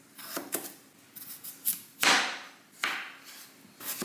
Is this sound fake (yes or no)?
no